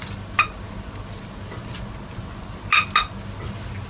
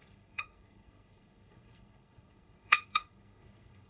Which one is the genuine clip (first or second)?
first